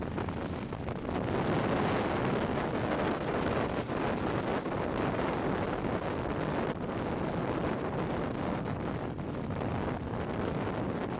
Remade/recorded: recorded